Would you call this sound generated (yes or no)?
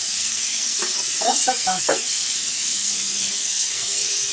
yes